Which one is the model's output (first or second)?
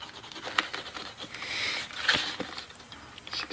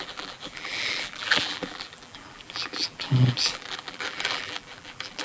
second